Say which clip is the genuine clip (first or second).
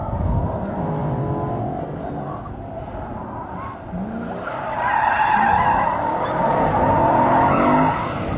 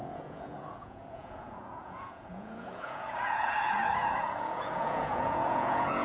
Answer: first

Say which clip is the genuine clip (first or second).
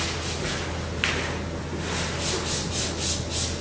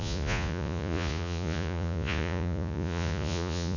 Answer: first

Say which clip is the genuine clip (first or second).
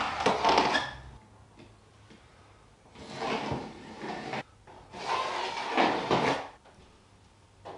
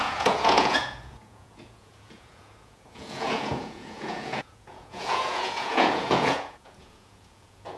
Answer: first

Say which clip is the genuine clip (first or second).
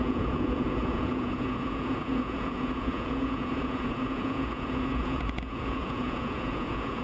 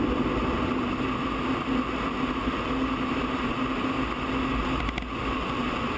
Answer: second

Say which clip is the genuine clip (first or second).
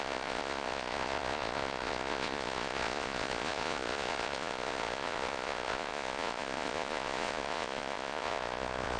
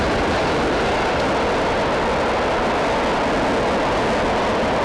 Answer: second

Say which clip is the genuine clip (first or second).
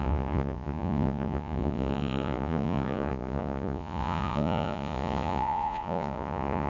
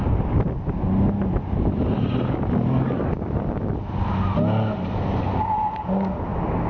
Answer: second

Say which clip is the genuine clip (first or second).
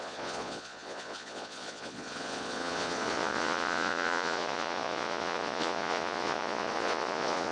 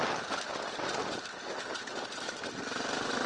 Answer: second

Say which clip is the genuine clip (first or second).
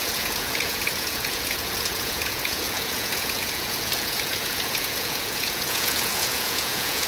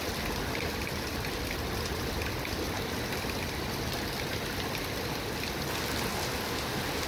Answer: second